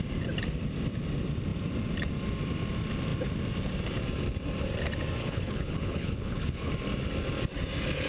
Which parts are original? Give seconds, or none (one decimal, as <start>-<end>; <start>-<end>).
0.0-5.2; 6.7-8.1